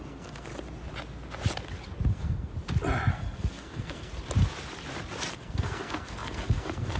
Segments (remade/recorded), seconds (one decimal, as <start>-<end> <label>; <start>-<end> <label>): 0.0-0.5 remade; 0.5-2.1 recorded; 2.1-2.5 remade; 2.5-3.1 recorded; 3.1-4.1 remade; 4.1-5.3 recorded; 5.3-7.0 remade